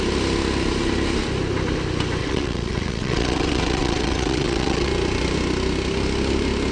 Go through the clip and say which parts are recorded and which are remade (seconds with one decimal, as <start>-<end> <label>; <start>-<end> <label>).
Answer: 0.0-2.2 recorded; 2.2-4.9 remade; 4.9-6.7 recorded